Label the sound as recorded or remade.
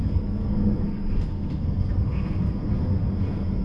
remade